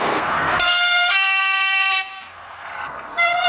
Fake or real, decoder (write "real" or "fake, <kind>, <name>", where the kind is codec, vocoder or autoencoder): fake, codec, SNAC